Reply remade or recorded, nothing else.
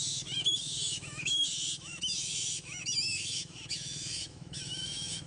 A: remade